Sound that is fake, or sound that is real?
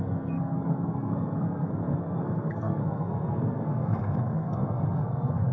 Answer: fake